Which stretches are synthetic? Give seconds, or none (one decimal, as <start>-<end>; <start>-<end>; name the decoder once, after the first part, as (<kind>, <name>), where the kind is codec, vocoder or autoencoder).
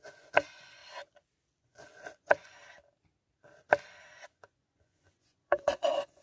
0.0-0.8 (vocoder, Vocos); 1.6-2.6; 4.1-6.2